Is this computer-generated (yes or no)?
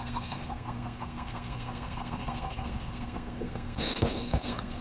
yes